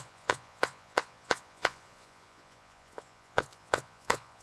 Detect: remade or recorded remade